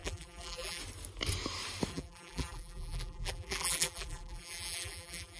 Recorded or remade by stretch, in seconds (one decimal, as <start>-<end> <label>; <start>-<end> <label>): 0.0-0.8 remade; 0.8-1.9 recorded; 1.9-5.4 remade